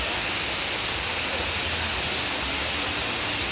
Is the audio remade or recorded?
recorded